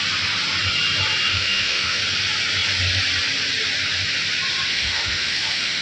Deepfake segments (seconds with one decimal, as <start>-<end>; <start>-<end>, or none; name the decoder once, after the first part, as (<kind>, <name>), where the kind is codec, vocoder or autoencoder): 1.3-2.0 (autoencoder, DAC-VAE); 4.7-5.8